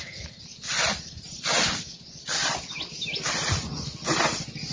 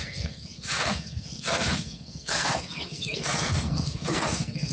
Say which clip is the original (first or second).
first